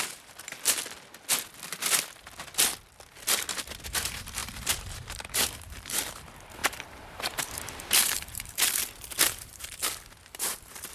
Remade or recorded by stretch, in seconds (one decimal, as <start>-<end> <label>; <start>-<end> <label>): 0.0-0.8 remade; 0.8-3.9 recorded; 3.9-10.9 remade